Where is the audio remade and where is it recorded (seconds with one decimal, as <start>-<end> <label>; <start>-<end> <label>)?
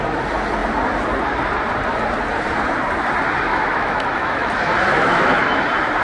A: 0.0-3.5 recorded; 3.5-4.5 remade; 4.5-4.9 recorded; 4.9-5.6 remade; 5.6-6.0 recorded